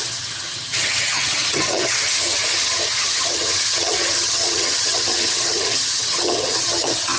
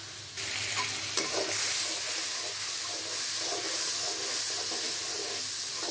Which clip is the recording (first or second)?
second